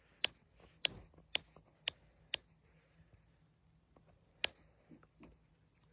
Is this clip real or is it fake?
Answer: real